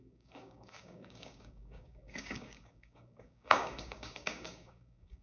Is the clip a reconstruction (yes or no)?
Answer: yes